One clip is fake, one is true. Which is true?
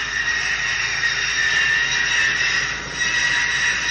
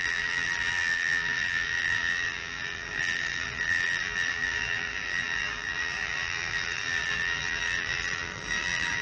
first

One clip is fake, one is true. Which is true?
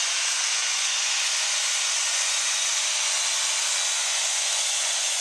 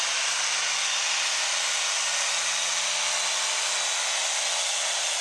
second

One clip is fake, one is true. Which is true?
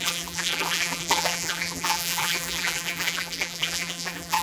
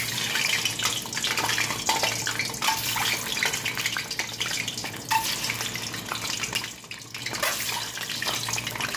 second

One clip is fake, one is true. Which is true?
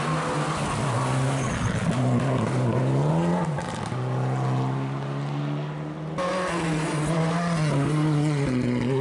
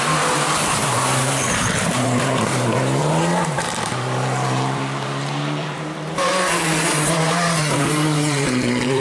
first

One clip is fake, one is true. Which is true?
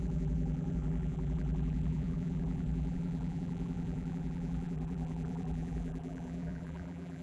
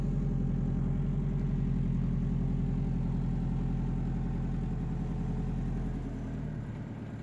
second